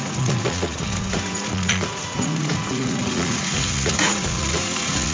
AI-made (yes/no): yes